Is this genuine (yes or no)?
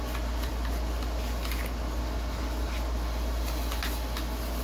yes